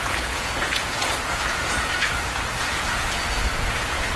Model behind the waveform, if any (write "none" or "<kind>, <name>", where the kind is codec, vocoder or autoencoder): vocoder, Vocos